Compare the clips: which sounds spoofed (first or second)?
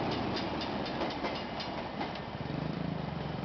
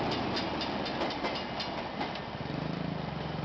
first